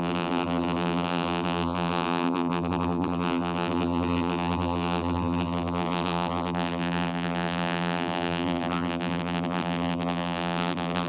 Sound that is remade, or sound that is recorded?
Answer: remade